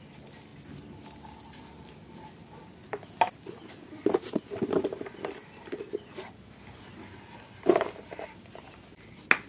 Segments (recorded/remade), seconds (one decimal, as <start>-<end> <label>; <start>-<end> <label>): 0.0-9.5 recorded